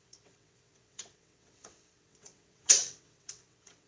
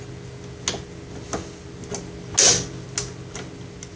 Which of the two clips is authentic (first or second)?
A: second